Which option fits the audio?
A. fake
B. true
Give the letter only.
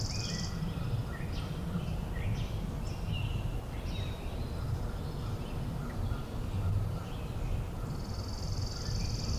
B